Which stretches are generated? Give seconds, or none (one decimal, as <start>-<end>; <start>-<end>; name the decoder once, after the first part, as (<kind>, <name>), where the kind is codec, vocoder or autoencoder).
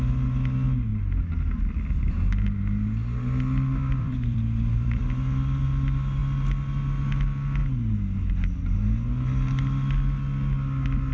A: 3.9-5.0 (vocoder, BigVGAN v2)